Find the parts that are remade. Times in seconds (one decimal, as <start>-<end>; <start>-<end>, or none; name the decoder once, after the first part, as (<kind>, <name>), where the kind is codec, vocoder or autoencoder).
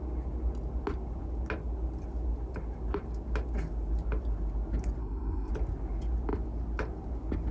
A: 5.0-5.5 (codec, SNAC)